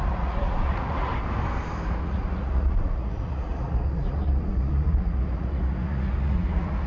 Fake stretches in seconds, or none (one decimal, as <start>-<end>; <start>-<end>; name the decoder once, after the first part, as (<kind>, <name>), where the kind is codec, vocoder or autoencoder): 0.0-1.1 (vocoder, Vocos); 2.0-6.9

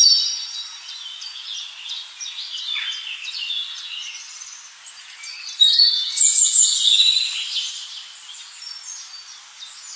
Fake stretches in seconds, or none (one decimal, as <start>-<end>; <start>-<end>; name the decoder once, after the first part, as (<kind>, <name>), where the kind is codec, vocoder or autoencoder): none

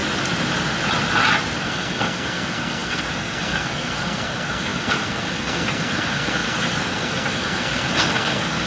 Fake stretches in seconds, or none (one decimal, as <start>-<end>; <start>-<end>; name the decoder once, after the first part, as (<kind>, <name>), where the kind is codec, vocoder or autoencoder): 1.6-8.7 (codec, SNAC)

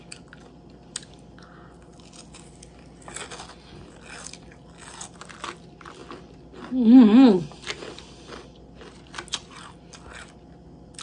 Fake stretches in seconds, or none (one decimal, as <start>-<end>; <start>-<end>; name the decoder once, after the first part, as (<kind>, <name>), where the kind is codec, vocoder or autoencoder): none

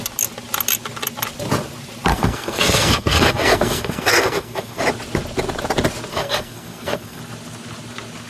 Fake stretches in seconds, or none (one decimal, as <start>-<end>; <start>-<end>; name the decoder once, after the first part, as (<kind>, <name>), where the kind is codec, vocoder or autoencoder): 2.1-4.8 (codec, SNAC); 6.1-7.2

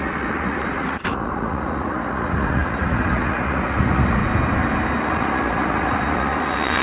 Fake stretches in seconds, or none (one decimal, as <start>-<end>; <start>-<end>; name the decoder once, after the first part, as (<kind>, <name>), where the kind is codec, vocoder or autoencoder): 0.0-4.2 (vocoder, Vocos); 5.0-6.8

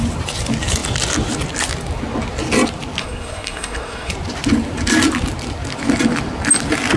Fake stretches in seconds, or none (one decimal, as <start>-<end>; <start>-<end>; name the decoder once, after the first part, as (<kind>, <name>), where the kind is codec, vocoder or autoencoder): 3.0-4.1 (codec, SNAC)

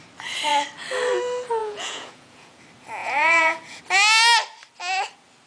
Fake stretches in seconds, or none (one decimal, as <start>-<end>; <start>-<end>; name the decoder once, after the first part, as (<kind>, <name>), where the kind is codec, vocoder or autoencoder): 1.6-2.6 (vocoder, Vocos); 3.0-3.8